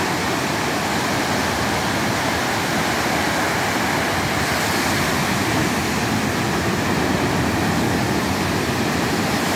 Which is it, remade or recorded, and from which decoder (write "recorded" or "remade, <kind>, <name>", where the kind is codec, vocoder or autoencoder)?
recorded